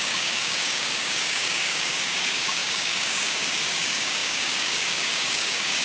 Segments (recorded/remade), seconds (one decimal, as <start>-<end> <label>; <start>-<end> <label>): 0.0-5.8 remade